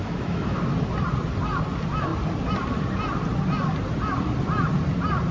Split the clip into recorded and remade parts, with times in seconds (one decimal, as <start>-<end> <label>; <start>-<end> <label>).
0.0-0.6 remade; 0.6-5.3 recorded